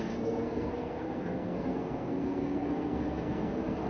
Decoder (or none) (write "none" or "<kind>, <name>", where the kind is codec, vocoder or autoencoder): codec, SNAC